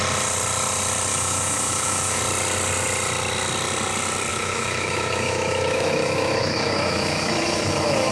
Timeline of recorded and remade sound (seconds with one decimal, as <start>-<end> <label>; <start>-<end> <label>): 0.0-1.1 recorded; 1.1-2.2 remade; 2.2-4.3 recorded; 4.3-8.1 remade